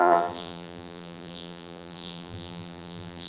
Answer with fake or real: fake